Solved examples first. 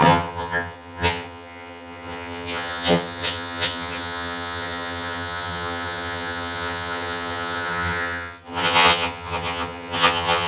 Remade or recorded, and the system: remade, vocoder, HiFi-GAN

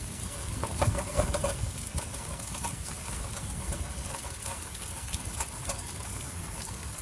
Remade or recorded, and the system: remade, codec, SNAC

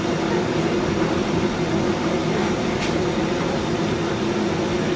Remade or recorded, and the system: recorded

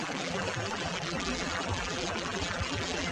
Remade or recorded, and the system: remade, vocoder, BigVGAN v2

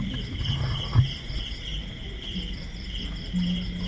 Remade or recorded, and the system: recorded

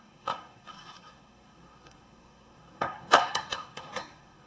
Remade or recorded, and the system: remade, codec, SNAC